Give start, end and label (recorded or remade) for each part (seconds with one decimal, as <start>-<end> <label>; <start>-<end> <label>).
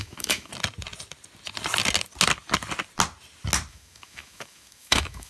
0.0-0.5 remade; 0.5-3.7 recorded; 3.7-5.3 remade